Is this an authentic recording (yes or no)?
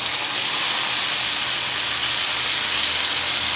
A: yes